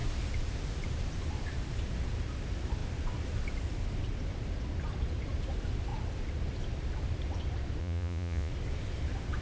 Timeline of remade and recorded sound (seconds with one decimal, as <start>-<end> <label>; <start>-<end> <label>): 0.0-7.8 recorded; 7.8-8.5 remade; 8.5-9.4 recorded